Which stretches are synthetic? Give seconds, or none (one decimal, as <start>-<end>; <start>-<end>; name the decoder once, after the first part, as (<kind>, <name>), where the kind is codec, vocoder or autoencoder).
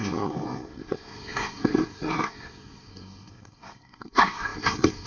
0.0-5.1 (codec, SNAC)